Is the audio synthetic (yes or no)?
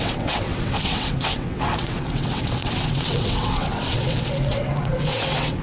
yes